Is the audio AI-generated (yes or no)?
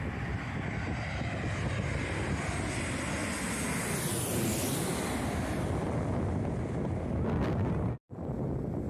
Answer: no